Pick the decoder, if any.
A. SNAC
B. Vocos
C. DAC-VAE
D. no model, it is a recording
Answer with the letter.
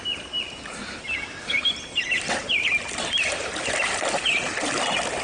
D